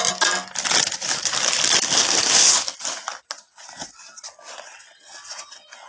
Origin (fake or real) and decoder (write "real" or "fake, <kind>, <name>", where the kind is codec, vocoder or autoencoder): real